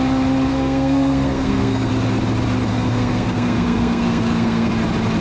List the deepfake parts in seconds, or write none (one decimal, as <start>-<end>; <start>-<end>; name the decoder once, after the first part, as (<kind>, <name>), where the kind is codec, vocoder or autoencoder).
0.5-1.9 (codec, SNAC); 2.7-4.7